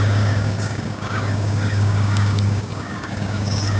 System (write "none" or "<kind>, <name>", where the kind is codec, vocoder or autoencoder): codec, DAC